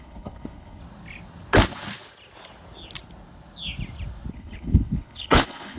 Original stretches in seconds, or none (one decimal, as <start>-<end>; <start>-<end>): 0.8-4.3